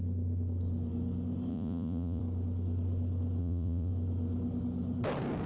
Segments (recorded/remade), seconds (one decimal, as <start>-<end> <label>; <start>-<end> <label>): 0.0-1.5 recorded; 1.5-2.2 remade; 2.2-3.4 recorded; 3.4-3.9 remade; 3.9-5.5 recorded